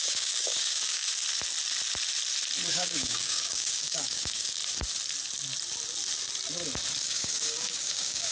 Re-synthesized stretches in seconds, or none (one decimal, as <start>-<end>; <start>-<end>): 0.0-1.1; 2.7-4.6; 7.0-8.3